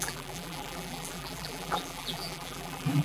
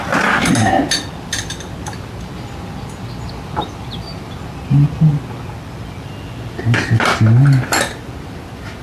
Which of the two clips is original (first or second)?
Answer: second